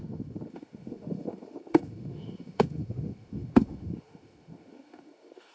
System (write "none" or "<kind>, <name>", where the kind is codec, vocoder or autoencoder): autoencoder, DAC-VAE